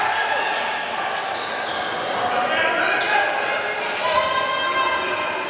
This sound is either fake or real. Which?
real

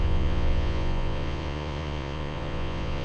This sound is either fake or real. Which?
fake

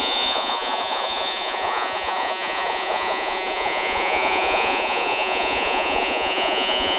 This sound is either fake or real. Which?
fake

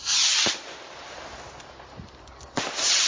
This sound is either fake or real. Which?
real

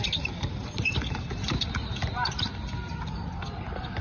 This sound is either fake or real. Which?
real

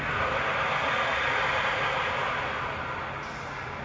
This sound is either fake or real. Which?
real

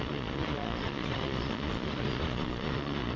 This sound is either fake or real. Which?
fake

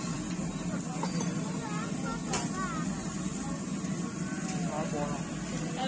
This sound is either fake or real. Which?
real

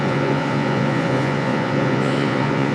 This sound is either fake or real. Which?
fake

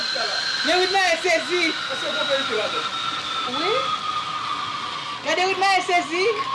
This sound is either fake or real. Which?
real